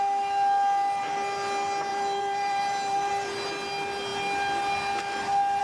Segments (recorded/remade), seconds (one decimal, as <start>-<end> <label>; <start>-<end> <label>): 0.0-1.9 recorded; 1.9-3.1 remade; 3.1-5.6 recorded